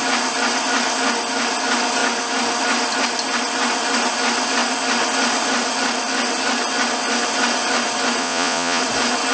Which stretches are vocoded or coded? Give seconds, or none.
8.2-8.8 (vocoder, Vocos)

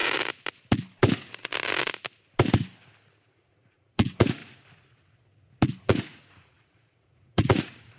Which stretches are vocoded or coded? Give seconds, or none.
3.3-4.4 (vocoder, Vocos); 5.8-8.0

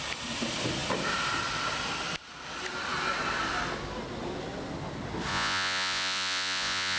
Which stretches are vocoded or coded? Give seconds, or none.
5.3-7.0 (vocoder, Vocos)

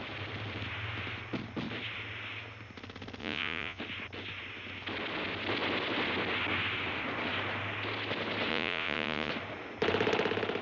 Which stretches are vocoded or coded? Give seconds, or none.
3.2-3.8 (vocoder, Vocos); 8.5-9.3

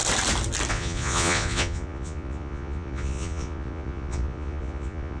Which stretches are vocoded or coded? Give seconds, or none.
0.7-5.2 (vocoder, Vocos)